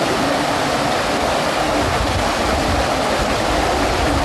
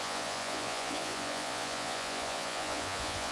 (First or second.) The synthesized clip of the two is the second